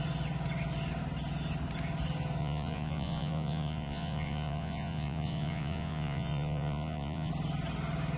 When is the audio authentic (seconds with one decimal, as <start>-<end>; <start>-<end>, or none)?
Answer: 0.0-2.4; 7.3-8.2